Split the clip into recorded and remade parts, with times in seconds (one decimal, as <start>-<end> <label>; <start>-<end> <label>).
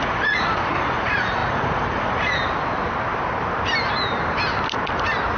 0.0-2.4 remade; 2.4-5.4 recorded